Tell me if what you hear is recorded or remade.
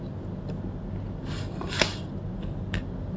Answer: recorded